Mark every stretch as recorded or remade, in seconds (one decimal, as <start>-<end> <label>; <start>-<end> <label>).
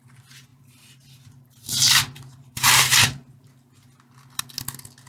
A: 0.0-0.5 recorded; 0.5-3.5 remade; 3.5-5.1 recorded